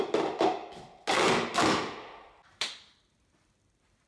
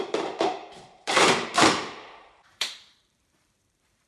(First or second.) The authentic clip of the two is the first